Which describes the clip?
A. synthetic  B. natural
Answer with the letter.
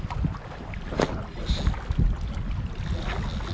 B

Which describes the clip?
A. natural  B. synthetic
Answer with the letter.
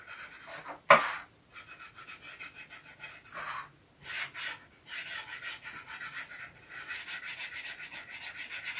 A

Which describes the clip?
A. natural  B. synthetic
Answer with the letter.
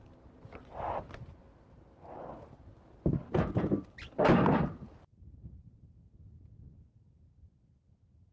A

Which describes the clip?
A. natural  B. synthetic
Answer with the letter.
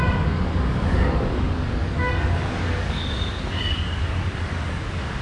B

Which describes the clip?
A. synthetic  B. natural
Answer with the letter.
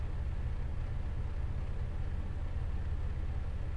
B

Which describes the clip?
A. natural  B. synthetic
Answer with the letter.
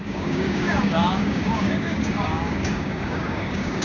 B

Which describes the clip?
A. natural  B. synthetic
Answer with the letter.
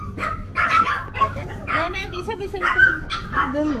B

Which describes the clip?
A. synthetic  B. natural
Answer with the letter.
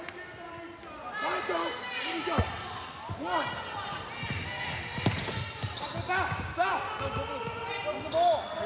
B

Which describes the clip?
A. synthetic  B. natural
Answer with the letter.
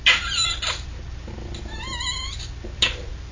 B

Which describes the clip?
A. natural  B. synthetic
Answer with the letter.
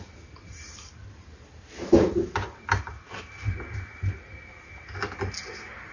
A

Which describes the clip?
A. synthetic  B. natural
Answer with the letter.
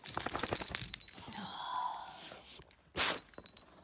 B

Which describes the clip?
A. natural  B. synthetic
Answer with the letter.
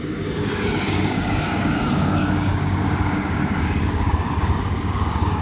B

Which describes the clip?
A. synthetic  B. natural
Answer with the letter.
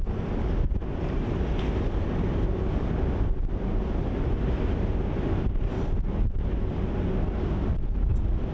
B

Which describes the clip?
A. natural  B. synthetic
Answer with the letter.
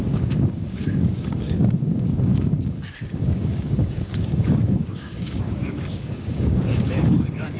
B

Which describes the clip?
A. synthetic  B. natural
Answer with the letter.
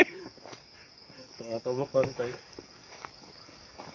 A